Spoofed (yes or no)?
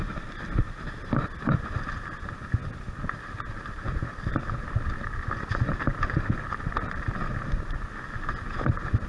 no